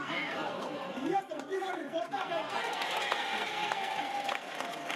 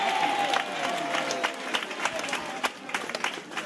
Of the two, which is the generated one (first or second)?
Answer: first